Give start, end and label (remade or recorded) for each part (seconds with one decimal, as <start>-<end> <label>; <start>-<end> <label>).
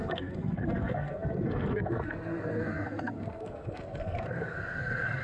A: 0.0-5.2 remade